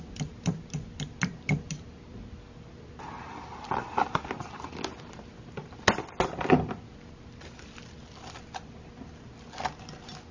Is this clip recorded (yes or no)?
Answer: yes